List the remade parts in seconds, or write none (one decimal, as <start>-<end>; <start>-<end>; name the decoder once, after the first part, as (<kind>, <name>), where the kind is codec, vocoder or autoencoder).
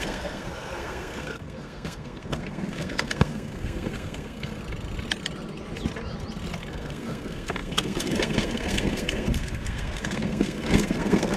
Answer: 0.0-4.6 (codec, SNAC); 6.7-11.4